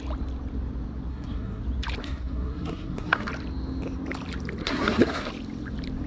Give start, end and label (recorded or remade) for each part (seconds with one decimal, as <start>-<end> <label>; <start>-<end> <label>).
0.0-1.1 recorded; 1.1-1.6 remade; 1.6-2.0 recorded; 2.0-3.3 remade; 3.3-4.6 recorded; 4.6-5.3 remade; 5.3-6.1 recorded